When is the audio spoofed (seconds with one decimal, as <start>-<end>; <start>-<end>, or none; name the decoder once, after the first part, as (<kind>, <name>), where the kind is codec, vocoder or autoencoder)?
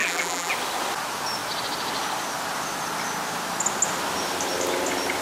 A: 0.0-0.5 (vocoder, BigVGAN v2)